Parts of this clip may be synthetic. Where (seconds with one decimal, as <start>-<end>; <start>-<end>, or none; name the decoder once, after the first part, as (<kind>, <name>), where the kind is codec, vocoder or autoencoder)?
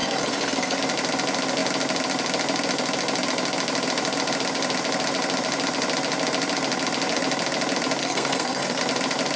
0.0-0.8 (codec, SNAC); 8.0-8.8